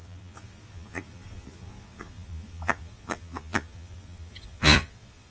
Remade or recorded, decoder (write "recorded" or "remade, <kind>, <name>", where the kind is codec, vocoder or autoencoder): remade, vocoder, Vocos